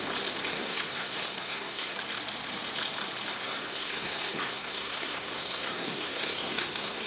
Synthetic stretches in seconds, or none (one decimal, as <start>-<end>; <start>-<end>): 0.5-2.0; 3.4-7.1